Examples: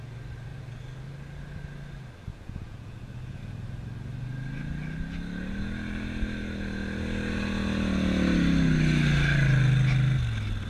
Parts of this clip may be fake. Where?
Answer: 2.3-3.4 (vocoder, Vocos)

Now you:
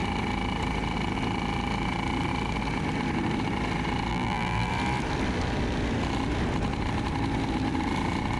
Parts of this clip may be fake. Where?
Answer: 4.1-4.7 (vocoder, BigVGAN v2)

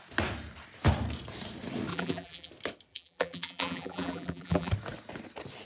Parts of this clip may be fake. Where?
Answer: 1.9-2.5 (vocoder, BigVGAN v2); 2.9-4.7

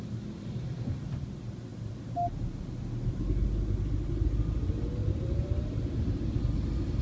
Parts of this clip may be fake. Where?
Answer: 1.7-3.2 (vocoder, BigVGAN v2); 5.0-6.3